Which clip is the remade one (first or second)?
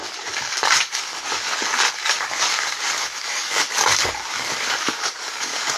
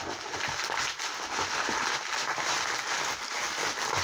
first